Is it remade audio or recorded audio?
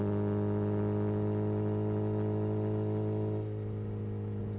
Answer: recorded